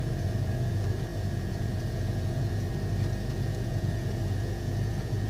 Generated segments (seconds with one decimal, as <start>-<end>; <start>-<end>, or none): 0.0-2.7; 3.3-5.3